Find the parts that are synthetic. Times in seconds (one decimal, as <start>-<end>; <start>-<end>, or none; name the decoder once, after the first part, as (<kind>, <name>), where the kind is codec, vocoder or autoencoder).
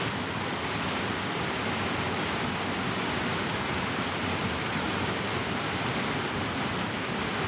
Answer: none